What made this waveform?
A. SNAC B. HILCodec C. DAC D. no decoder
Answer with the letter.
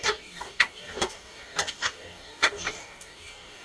C